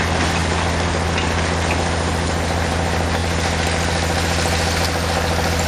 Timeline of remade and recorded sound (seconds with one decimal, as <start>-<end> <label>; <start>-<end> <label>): 0.0-5.7 recorded